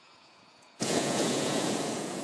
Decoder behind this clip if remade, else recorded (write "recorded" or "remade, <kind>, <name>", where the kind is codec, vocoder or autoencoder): remade, vocoder, Vocos